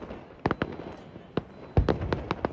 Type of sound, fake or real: real